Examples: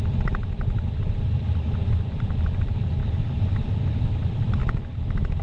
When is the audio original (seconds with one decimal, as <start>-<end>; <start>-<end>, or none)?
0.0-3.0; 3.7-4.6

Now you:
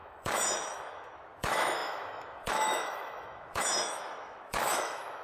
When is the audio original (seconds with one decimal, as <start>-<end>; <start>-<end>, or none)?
none

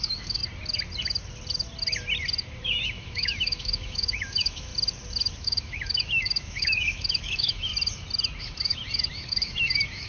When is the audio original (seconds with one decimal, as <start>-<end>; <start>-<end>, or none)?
0.4-2.6; 4.7-5.3; 7.7-8.4